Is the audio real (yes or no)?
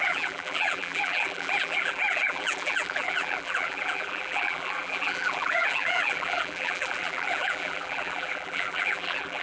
no